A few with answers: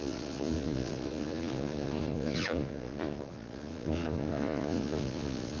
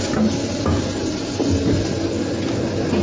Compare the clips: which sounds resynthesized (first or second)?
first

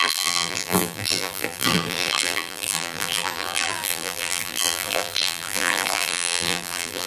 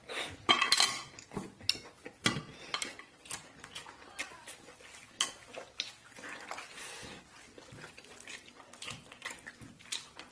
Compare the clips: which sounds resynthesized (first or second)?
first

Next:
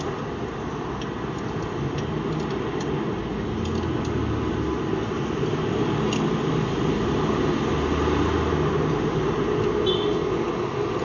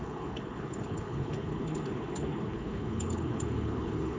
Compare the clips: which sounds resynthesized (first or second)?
second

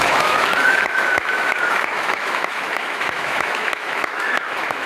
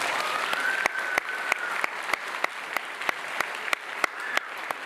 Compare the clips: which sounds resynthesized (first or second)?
first